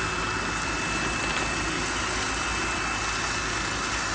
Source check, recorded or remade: recorded